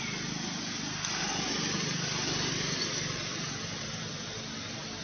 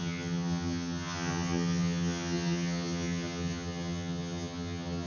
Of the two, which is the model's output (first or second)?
second